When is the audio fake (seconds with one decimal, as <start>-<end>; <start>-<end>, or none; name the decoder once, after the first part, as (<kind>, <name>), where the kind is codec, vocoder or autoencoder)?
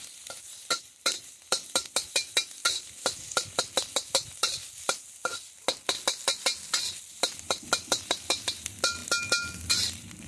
0.0-2.6 (vocoder, BigVGAN v2); 7.0-10.3